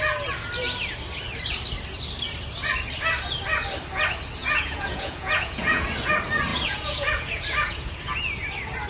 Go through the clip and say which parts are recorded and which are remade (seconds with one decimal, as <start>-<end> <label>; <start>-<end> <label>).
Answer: 0.0-4.4 recorded; 4.4-5.9 remade; 5.9-6.5 recorded; 6.5-8.0 remade; 8.0-8.9 recorded